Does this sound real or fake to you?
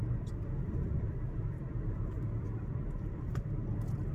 fake